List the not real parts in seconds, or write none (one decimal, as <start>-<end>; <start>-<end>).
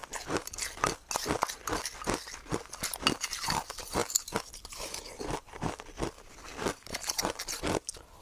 3.3-4.0; 5.5-8.2